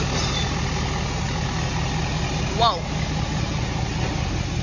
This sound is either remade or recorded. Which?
recorded